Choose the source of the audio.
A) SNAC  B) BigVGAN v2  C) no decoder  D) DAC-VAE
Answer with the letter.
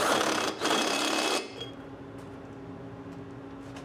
C